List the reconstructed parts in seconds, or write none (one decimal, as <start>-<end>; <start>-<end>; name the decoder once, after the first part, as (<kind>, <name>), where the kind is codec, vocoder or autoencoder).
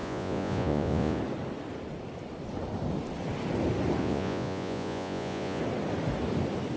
0.0-1.2 (vocoder, Vocos); 4.0-5.6